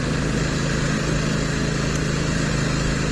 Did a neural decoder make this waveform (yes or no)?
no